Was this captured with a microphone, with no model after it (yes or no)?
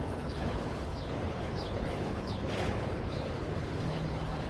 no